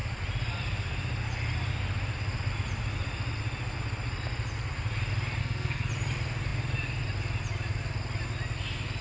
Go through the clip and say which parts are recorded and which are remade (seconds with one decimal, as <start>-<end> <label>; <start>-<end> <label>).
0.0-5.4 recorded; 5.4-5.9 remade; 5.9-9.0 recorded